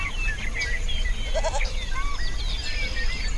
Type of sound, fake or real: real